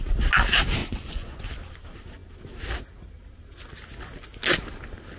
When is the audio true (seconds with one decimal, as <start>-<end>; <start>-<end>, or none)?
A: 0.0-0.8; 1.4-5.2